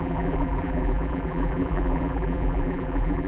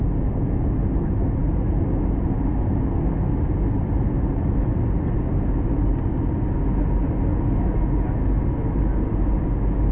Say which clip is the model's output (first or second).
first